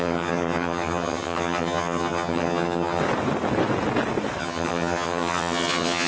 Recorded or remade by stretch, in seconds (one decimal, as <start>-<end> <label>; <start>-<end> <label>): 0.0-3.0 remade; 3.0-4.4 recorded; 4.4-6.1 remade